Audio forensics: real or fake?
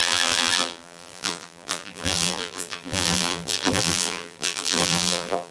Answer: fake